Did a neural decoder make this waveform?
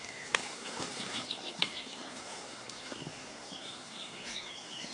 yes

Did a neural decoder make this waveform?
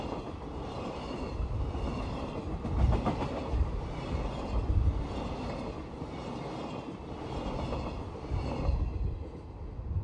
no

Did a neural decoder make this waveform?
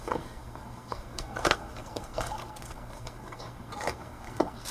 yes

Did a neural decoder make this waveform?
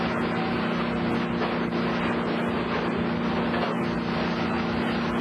no